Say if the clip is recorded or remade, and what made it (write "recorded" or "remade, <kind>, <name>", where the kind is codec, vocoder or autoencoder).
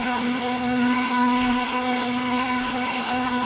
remade, codec, SNAC